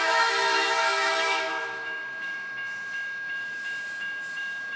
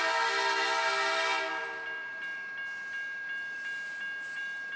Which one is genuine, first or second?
second